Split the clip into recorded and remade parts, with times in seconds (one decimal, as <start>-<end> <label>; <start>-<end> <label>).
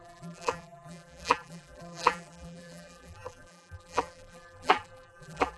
0.0-5.6 remade